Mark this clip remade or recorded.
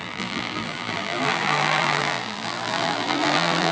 remade